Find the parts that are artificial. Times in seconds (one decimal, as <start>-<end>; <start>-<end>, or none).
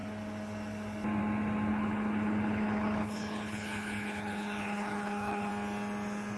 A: 1.7-5.5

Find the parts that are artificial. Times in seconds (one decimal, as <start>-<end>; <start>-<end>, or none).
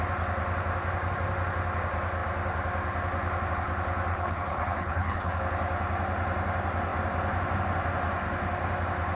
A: 4.1-5.4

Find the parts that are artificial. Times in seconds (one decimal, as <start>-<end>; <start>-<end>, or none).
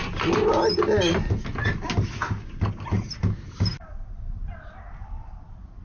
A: none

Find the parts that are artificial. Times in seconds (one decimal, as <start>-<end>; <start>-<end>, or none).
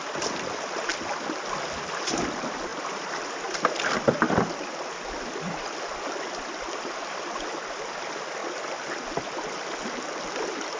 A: none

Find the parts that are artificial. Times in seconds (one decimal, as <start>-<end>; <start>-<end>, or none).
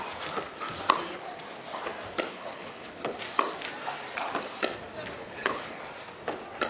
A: 2.3-3.2; 5.2-5.8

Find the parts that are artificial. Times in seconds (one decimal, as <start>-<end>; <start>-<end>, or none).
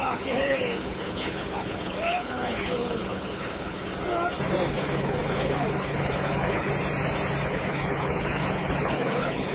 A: 0.0-3.9; 4.7-6.7; 7.5-9.5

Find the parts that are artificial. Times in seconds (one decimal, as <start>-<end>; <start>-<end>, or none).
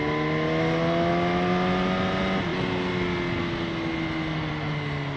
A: none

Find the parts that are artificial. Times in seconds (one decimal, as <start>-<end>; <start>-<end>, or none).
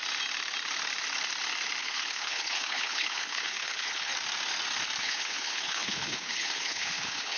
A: 1.8-4.1; 5.0-7.4